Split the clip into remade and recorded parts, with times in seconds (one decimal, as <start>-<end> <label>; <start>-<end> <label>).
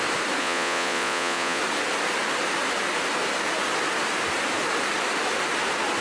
0.0-0.4 recorded; 0.4-1.6 remade; 1.6-6.0 recorded